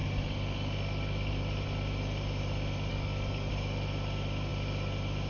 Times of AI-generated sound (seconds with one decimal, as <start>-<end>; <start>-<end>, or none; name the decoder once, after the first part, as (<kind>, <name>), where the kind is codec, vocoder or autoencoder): 2.9-3.5 (codec, DAC)